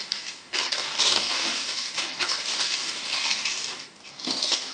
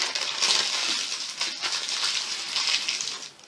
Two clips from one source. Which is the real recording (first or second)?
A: second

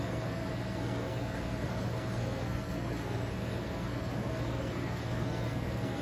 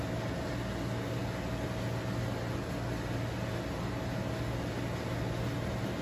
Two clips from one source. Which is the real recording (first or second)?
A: second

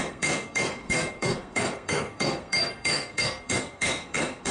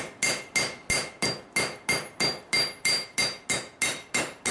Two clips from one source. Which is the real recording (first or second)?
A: second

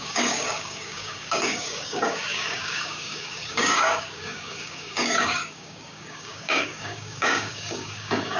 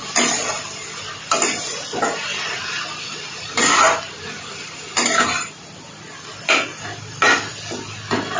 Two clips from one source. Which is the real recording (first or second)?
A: second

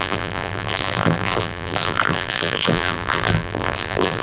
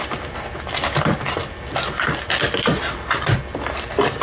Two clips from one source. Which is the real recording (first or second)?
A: second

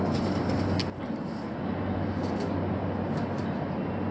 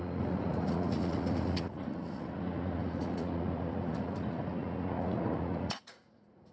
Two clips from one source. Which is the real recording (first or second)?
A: first